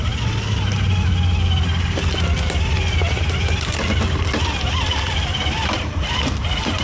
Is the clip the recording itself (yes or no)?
yes